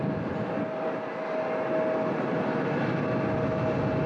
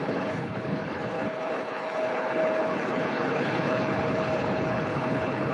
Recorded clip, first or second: first